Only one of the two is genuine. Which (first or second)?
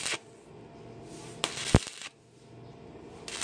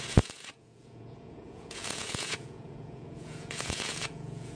first